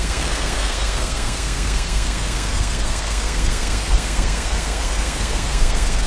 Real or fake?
fake